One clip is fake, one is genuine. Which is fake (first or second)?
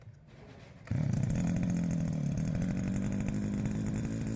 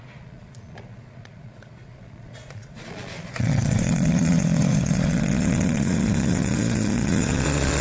second